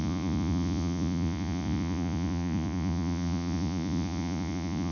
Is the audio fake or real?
fake